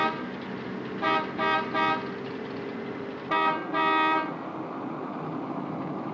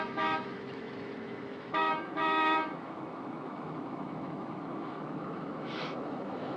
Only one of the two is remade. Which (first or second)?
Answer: second